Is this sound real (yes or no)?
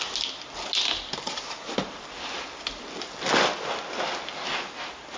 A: yes